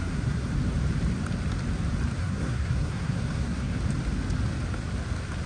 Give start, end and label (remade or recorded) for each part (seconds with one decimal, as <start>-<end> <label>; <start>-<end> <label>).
0.0-0.5 remade; 0.5-2.2 recorded; 2.2-3.8 remade; 3.8-5.5 recorded